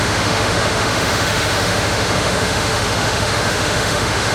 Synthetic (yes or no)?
yes